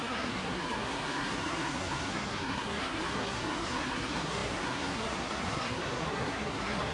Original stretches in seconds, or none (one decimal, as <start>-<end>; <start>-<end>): none